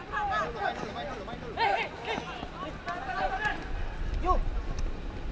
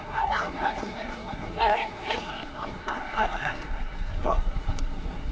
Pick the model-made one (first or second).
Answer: second